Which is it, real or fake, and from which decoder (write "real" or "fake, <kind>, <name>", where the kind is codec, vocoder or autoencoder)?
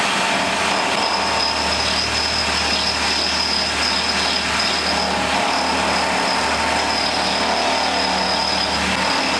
real